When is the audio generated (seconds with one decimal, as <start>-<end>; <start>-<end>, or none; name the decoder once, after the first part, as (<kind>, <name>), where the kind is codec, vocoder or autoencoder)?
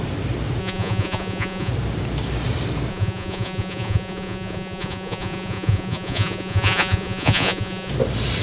0.6-1.7 (vocoder, Vocos); 2.9-7.9